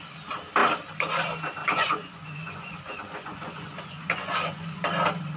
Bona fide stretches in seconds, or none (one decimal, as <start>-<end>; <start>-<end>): 0.0-1.6; 4.8-5.4